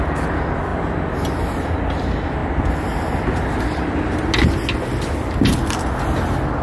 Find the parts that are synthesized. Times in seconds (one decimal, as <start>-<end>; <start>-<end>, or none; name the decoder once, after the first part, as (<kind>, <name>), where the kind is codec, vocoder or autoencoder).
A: none

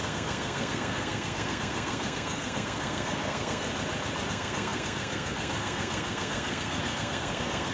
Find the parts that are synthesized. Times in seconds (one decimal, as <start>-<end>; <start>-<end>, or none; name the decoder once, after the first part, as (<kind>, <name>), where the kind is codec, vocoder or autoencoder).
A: 0.0-3.7 (codec, SNAC); 4.3-7.7

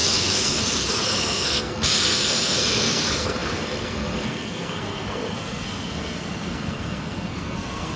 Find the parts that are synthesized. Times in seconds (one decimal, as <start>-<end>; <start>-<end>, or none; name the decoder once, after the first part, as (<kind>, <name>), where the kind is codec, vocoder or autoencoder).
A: 0.0-8.0 (codec, SNAC)

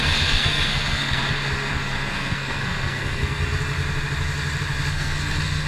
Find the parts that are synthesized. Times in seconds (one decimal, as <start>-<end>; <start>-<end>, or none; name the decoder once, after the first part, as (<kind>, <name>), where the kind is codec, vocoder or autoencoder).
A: 0.0-1.2 (codec, SNAC); 1.7-3.4; 4.9-5.7